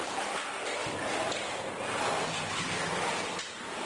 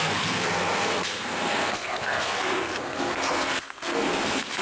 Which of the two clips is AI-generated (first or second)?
second